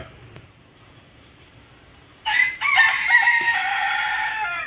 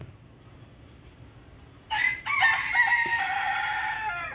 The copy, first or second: first